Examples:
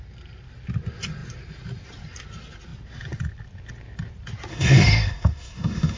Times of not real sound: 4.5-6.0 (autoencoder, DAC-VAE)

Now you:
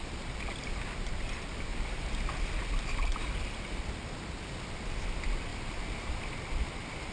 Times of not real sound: 1.7-2.8 (vocoder, BigVGAN v2); 5.5-6.1

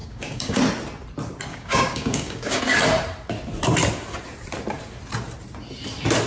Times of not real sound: 0.0-0.6 (codec, DAC); 1.5-2.6

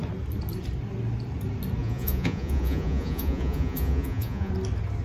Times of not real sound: 1.8-4.5 (vocoder, Vocos)

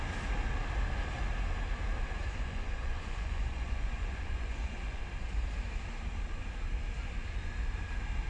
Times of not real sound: 2.2-5.0 (vocoder, Vocos)

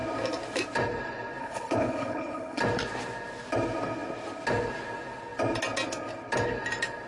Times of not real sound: 1.4-2.6 (codec, HILCodec)

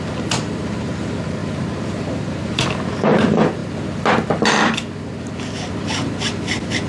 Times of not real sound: 0.0-3.6 (vocoder, BigVGAN v2)

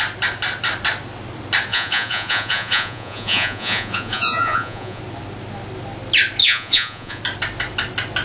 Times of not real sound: 1.7-5.0 (vocoder, Vocos); 6.4-7.2